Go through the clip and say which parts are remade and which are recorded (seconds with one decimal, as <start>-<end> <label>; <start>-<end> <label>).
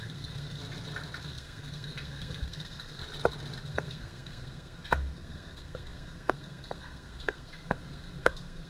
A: 0.0-0.6 remade; 0.6-1.2 recorded; 1.2-3.0 remade; 3.0-3.6 recorded; 3.6-8.7 remade